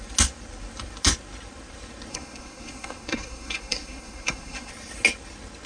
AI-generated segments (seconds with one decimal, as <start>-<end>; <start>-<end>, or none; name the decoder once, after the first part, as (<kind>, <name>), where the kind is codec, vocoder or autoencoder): 2.1-4.7 (codec, SNAC)